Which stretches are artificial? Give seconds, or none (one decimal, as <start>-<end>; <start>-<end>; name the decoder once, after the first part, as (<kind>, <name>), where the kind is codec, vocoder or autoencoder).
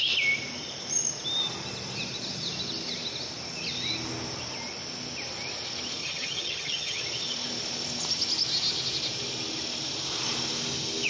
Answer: 6.0-7.0 (vocoder, HiFi-GAN)